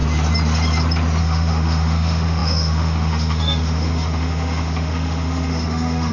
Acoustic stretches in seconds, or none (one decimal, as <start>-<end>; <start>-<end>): 0.0-1.2